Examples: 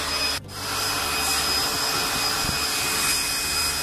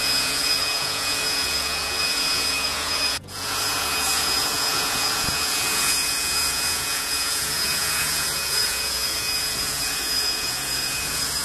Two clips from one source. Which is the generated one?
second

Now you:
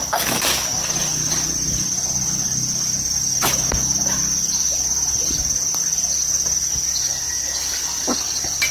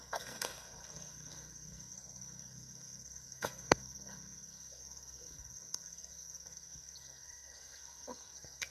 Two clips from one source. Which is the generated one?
second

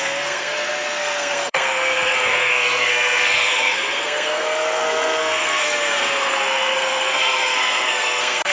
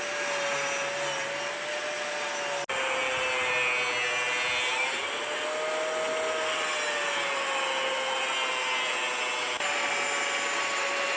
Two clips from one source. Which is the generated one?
first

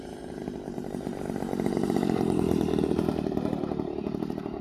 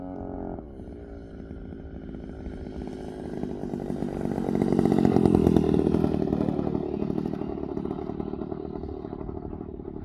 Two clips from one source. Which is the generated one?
first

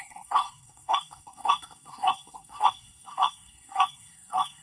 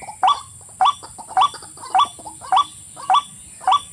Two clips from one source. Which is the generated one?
first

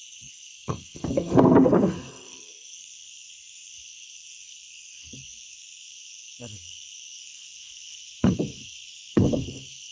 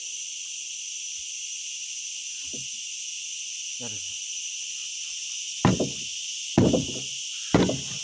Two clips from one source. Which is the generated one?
first